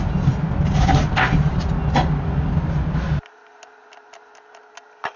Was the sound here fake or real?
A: real